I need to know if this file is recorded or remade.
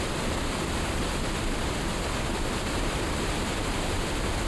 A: remade